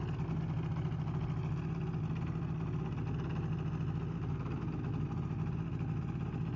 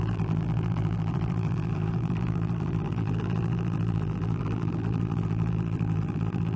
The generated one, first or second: second